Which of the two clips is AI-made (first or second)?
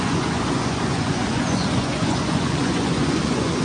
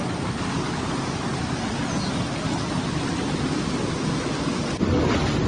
first